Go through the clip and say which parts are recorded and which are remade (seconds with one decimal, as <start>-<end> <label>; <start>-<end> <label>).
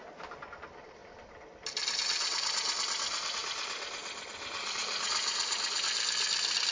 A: 0.0-6.7 recorded